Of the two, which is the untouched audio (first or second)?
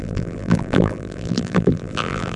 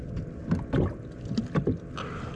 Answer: second